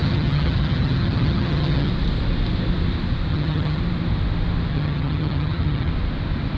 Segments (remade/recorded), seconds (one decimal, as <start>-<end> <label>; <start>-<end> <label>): 0.0-1.9 remade; 1.9-3.3 recorded; 3.3-3.8 remade; 3.8-4.7 recorded; 4.7-5.9 remade; 5.9-6.6 recorded